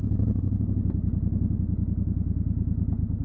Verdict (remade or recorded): recorded